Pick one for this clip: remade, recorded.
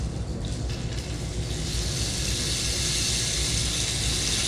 recorded